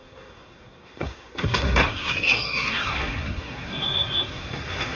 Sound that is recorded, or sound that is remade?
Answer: remade